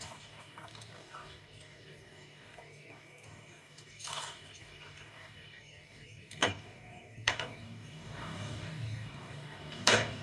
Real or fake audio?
fake